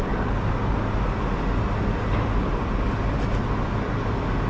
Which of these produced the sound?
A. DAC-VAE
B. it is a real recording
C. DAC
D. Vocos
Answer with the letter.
B